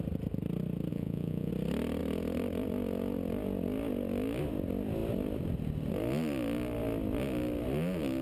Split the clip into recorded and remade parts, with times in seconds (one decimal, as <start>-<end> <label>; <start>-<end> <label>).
0.0-0.9 recorded; 0.9-1.5 remade; 1.5-8.2 recorded